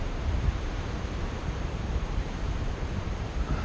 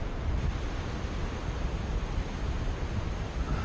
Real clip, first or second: second